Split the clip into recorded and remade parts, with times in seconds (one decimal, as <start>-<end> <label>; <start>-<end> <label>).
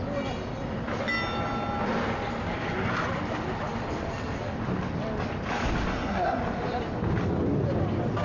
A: 0.0-5.9 recorded; 5.9-6.4 remade; 6.4-8.2 recorded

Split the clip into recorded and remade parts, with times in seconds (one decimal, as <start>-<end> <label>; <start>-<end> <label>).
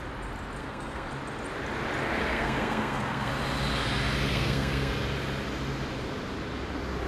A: 0.0-0.6 recorded; 0.6-1.1 remade; 1.1-2.2 recorded; 2.2-3.3 remade; 3.3-4.3 recorded; 4.3-4.9 remade; 4.9-7.1 recorded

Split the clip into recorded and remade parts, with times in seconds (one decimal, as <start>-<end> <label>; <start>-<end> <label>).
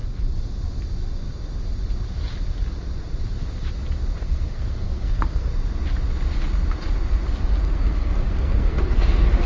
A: 0.0-4.2 recorded; 4.2-5.5 remade; 5.5-7.6 recorded; 7.6-9.5 remade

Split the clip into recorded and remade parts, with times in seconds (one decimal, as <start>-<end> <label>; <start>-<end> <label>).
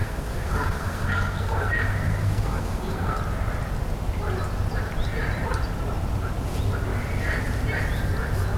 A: 0.0-3.2 remade; 3.2-8.6 recorded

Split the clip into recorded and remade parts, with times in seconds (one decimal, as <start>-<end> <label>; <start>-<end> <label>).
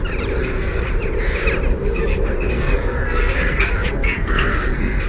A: 0.0-0.4 recorded; 0.4-0.9 remade; 0.9-1.8 recorded; 1.8-5.1 remade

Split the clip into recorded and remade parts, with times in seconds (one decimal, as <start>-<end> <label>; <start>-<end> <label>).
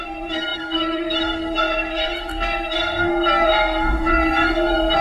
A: 0.0-5.0 remade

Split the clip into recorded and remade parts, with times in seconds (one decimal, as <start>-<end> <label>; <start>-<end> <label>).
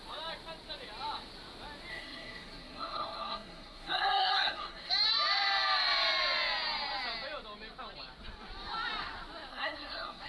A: 0.0-1.9 recorded; 1.9-4.9 remade; 4.9-9.5 recorded; 9.5-10.3 remade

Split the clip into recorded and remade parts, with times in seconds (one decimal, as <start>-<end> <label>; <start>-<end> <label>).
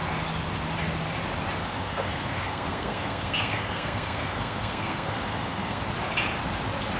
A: 0.0-1.6 recorded; 1.6-5.8 remade; 5.8-7.0 recorded